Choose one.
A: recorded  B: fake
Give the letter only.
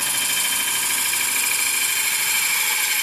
A